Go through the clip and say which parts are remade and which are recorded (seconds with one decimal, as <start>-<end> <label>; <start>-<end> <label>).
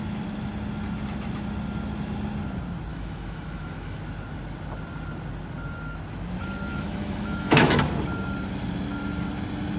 0.0-2.9 recorded; 2.9-4.0 remade; 4.0-6.7 recorded; 6.7-7.8 remade; 7.8-9.8 recorded